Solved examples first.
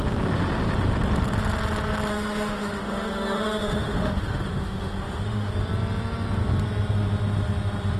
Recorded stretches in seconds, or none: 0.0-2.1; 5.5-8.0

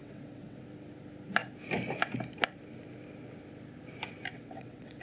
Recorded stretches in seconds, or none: 0.6-4.3